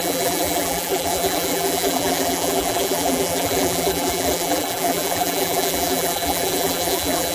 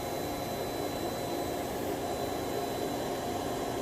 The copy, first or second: first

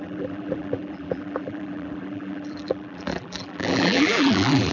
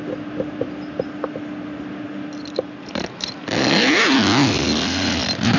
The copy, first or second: first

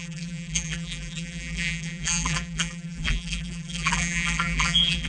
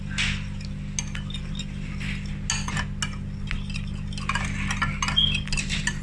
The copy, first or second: first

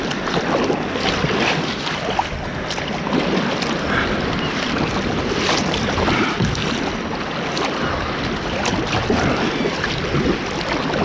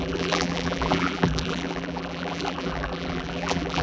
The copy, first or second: second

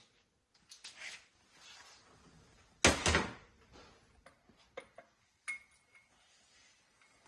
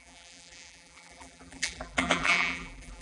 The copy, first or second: second